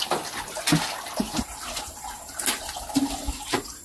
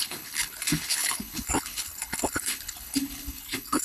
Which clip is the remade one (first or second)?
second